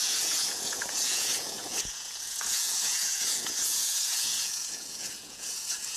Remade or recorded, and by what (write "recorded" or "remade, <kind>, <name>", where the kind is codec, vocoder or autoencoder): remade, vocoder, Vocos